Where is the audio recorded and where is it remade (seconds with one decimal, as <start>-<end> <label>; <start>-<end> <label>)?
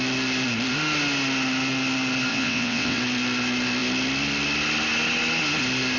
0.0-2.3 recorded; 2.3-3.0 remade; 3.0-6.0 recorded